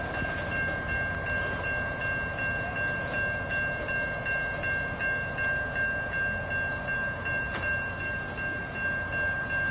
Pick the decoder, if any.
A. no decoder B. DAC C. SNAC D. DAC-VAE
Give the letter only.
A